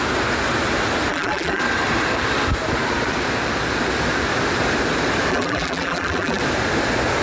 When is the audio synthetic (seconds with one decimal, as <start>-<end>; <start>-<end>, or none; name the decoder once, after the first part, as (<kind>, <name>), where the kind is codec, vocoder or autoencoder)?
1.1-1.6 (vocoder, BigVGAN v2); 5.3-6.4